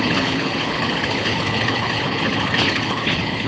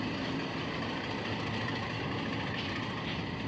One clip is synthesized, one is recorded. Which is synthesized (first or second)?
first